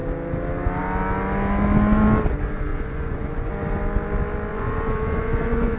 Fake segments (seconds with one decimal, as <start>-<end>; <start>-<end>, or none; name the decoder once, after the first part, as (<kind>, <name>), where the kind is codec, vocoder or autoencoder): 2.7-3.5 (vocoder, Vocos); 4.5-5.8